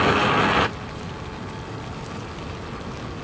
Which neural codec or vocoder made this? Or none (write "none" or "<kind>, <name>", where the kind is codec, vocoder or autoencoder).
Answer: none